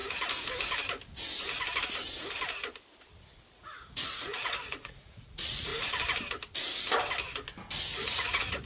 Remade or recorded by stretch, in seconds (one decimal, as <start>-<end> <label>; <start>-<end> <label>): 0.0-3.5 recorded; 3.5-5.7 remade; 5.7-7.9 recorded; 7.9-8.7 remade

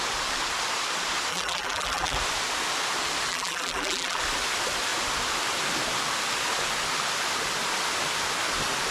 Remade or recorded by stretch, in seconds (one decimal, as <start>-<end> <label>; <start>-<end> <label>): 0.0-1.3 recorded; 1.3-2.2 remade; 2.2-3.3 recorded; 3.3-4.2 remade; 4.2-8.9 recorded

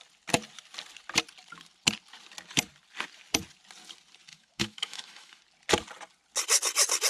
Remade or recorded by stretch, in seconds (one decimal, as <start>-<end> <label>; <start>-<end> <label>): 0.0-4.3 recorded; 4.3-5.4 remade; 5.4-7.1 recorded

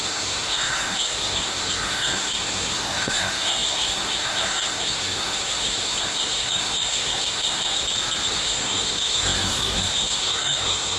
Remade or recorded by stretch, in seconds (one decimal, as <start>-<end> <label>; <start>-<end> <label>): 0.0-7.8 remade; 7.8-8.3 recorded; 8.3-11.0 remade

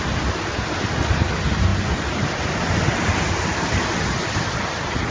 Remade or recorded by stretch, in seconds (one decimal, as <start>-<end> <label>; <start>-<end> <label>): 0.0-5.1 recorded

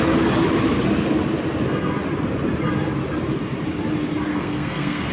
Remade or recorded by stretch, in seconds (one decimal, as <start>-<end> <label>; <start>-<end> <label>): 0.0-4.3 recorded; 4.3-5.1 remade

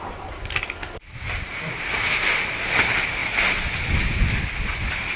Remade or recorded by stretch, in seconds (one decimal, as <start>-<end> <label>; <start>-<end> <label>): 0.0-5.2 recorded